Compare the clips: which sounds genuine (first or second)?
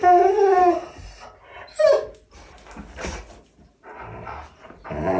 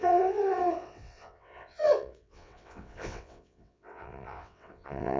first